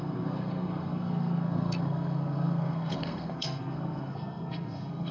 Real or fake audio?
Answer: fake